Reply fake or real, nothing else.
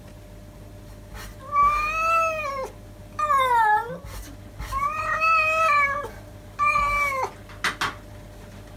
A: real